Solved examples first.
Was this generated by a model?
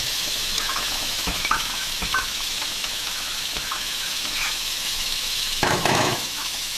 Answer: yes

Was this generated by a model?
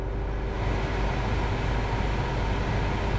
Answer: no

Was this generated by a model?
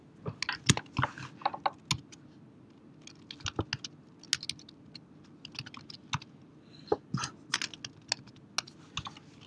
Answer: no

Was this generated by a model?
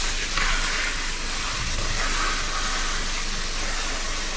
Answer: no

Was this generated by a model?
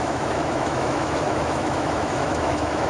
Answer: yes